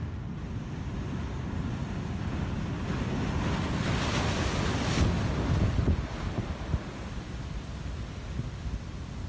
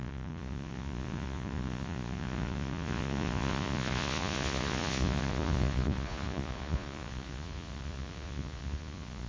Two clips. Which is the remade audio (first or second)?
second